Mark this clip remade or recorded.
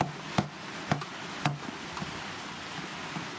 recorded